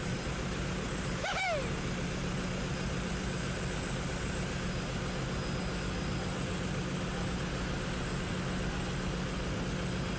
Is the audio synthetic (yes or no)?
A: no